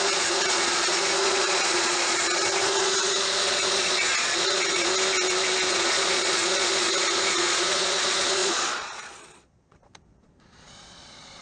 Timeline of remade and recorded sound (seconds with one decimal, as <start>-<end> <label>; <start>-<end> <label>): 0.0-4.9 remade; 4.9-5.7 recorded; 5.7-11.4 remade